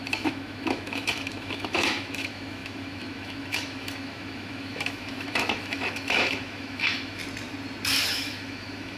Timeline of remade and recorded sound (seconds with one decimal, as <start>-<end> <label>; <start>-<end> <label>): 0.0-7.2 remade; 7.2-8.1 recorded; 8.1-9.0 remade